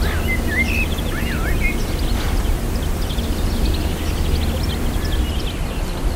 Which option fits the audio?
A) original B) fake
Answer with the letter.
A